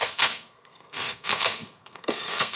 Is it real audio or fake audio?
fake